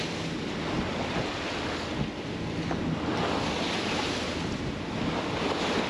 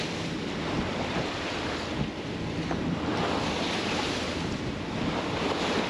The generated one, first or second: second